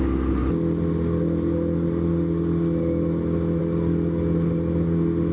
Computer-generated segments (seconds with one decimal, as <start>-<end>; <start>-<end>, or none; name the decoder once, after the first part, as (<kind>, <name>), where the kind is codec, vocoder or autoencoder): none